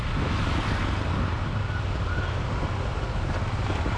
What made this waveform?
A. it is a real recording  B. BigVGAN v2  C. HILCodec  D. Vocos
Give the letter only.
A